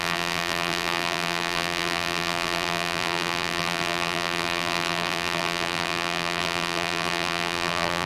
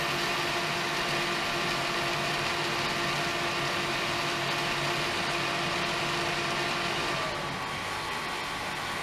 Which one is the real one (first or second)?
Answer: second